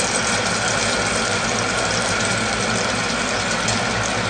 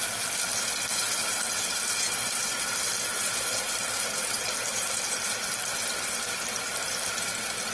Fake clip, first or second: second